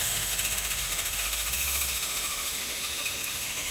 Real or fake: fake